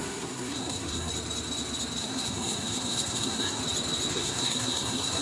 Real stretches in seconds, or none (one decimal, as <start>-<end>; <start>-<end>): 1.1-2.0; 3.6-4.1